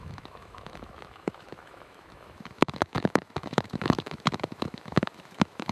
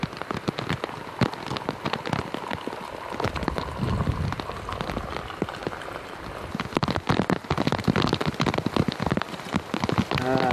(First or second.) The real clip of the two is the second